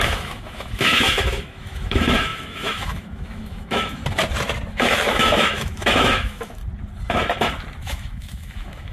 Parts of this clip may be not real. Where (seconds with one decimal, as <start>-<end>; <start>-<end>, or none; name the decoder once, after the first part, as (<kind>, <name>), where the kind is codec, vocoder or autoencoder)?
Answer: 0.0-4.0 (autoencoder, DAC-VAE); 4.7-6.6; 7.8-8.9